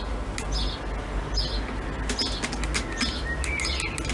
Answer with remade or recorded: recorded